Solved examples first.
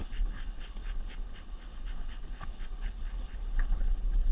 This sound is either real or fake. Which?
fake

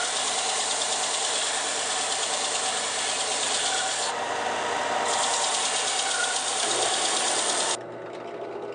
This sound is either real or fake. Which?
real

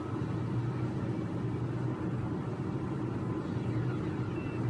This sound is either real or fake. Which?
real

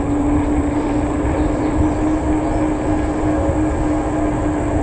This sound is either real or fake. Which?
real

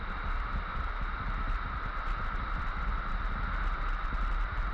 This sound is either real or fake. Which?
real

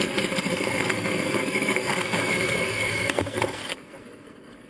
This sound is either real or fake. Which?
fake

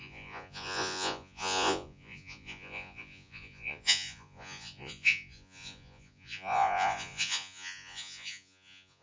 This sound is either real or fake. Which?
fake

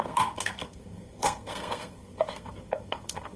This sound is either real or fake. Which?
fake